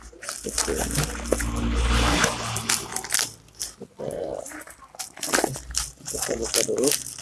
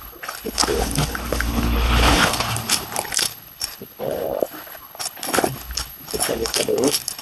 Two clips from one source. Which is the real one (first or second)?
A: first